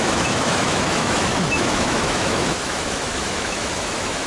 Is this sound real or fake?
fake